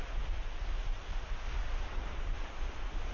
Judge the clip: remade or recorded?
recorded